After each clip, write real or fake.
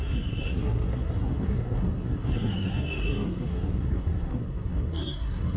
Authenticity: fake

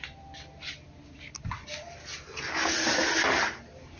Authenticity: real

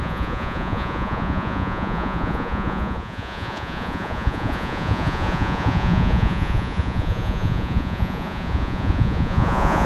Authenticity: fake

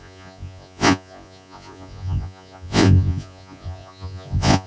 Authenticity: fake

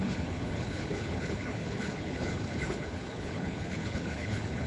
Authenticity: fake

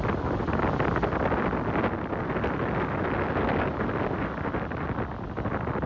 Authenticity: real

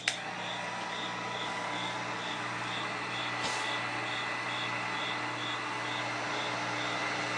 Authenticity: real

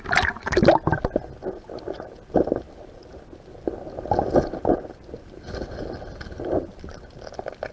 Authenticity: real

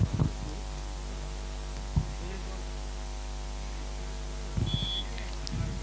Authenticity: real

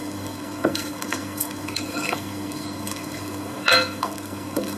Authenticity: fake